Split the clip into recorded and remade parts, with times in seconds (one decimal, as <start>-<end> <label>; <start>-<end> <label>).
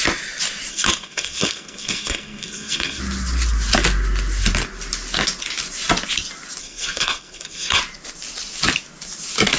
0.0-0.7 recorded; 0.7-3.0 remade; 3.0-6.6 recorded; 6.6-7.8 remade; 7.8-9.6 recorded